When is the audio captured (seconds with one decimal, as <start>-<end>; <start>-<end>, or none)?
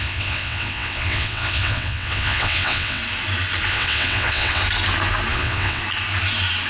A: 3.0-3.7; 4.6-5.3; 5.8-6.7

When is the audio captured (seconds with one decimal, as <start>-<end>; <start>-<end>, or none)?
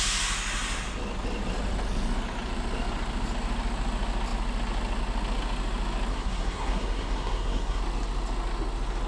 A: 0.0-6.1; 7.8-9.1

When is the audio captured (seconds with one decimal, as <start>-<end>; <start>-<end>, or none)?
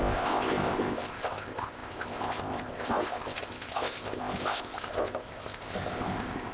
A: none